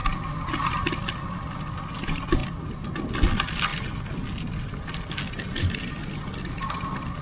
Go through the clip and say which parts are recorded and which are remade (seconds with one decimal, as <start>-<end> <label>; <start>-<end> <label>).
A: 0.0-7.2 recorded